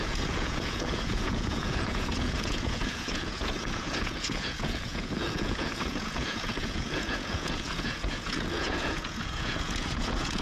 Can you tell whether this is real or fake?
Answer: fake